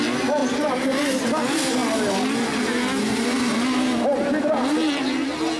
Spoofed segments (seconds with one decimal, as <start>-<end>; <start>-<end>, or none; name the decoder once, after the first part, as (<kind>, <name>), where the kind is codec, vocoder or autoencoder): 0.4-1.2 (vocoder, BigVGAN v2)